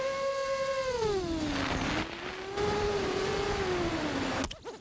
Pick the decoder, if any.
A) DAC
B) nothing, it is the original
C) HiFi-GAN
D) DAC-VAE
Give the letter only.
B